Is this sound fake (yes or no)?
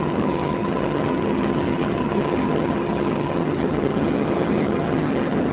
yes